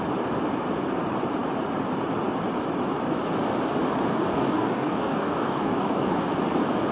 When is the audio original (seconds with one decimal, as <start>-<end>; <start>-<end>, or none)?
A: 0.0-4.1; 6.1-6.9